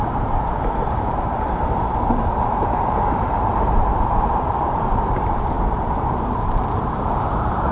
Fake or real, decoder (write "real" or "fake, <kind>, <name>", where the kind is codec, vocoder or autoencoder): fake, vocoder, BigVGAN v2